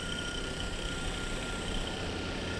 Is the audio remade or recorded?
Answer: remade